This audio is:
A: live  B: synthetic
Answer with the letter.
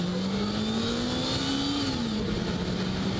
A